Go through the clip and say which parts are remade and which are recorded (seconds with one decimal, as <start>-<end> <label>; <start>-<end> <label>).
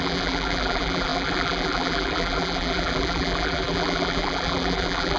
0.0-5.2 remade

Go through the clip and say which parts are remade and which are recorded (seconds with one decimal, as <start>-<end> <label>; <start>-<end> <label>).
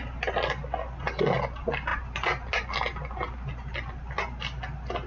0.0-5.1 recorded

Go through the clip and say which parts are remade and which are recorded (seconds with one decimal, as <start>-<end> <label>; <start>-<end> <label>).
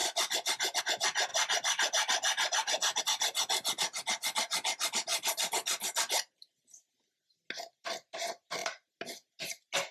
0.0-0.8 remade; 0.8-1.3 recorded; 1.3-3.0 remade; 3.0-5.1 recorded; 5.1-6.5 remade; 6.5-9.9 recorded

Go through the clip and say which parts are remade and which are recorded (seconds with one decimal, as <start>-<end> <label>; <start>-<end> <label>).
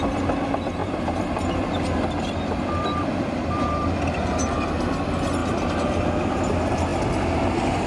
0.0-0.8 recorded; 0.8-4.0 remade; 4.0-7.9 recorded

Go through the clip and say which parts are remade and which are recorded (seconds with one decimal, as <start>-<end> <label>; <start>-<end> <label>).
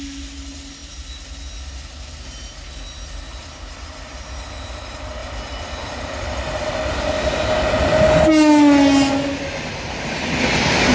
0.0-0.8 recorded; 0.8-1.7 remade; 1.7-5.2 recorded; 5.2-6.7 remade; 6.7-10.9 recorded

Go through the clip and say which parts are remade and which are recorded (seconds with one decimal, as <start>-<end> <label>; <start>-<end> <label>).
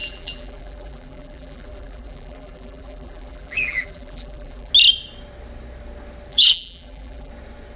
0.0-4.7 remade; 4.7-6.3 recorded; 6.3-7.3 remade; 7.3-7.8 recorded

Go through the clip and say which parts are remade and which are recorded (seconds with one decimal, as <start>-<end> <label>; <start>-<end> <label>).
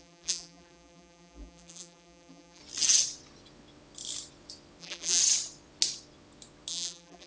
0.0-2.6 remade; 2.6-4.8 recorded; 4.8-5.2 remade; 5.2-6.7 recorded; 6.7-7.3 remade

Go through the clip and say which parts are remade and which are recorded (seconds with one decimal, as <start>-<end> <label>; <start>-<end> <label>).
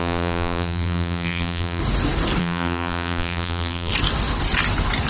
0.0-1.8 remade; 1.8-2.4 recorded; 2.4-3.9 remade; 3.9-5.1 recorded